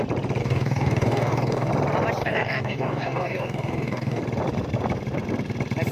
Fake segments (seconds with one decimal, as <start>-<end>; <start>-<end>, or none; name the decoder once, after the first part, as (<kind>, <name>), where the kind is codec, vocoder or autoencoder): 0.4-1.7 (codec, DAC); 2.2-4.2